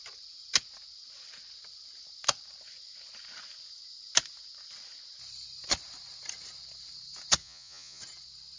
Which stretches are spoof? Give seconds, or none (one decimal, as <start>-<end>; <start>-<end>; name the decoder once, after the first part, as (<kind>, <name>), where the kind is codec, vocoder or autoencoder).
7.4-8.0 (vocoder, Vocos)